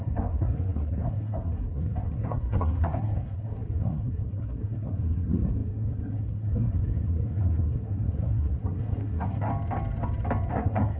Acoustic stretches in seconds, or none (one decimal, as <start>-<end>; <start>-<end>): 9.5-10.5